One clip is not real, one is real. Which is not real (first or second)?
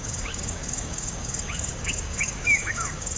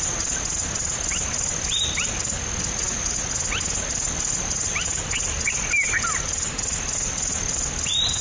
first